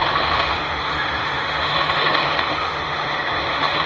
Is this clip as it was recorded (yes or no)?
no